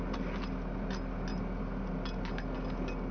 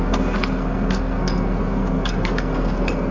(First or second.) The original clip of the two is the first